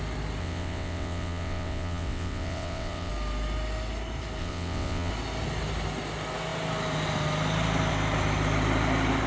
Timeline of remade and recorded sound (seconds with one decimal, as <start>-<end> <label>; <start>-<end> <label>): 0.0-0.4 recorded; 0.4-3.1 remade; 3.1-4.4 recorded; 4.4-5.1 remade; 5.1-9.3 recorded